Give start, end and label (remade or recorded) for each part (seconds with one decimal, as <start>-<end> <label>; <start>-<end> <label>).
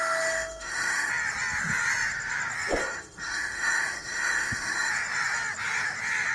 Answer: 0.0-1.1 remade; 1.1-2.8 recorded; 2.8-4.9 remade; 4.9-6.3 recorded